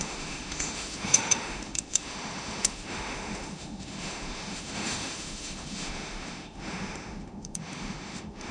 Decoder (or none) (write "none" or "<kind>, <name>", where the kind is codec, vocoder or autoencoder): autoencoder, DAC-VAE